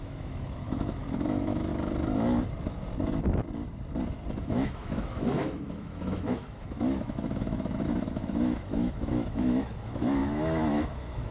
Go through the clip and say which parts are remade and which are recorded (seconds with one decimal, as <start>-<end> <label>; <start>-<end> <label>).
0.0-1.7 remade; 1.7-4.4 recorded; 4.4-11.3 remade